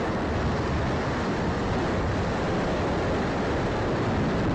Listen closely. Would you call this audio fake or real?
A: real